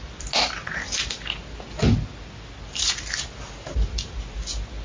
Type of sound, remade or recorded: recorded